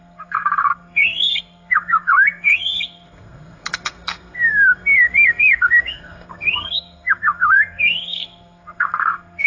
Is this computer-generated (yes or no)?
yes